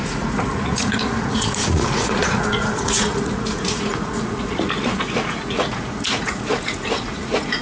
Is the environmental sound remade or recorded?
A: remade